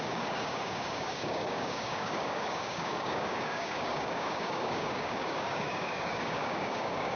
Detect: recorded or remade remade